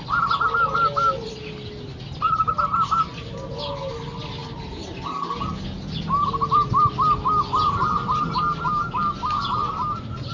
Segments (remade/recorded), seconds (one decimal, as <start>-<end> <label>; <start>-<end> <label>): 0.0-10.3 recorded